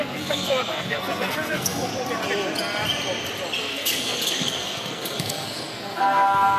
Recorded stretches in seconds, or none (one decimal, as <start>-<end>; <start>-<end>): 1.9-3.6